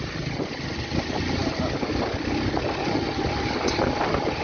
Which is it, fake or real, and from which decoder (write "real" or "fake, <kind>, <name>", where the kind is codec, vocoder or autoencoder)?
real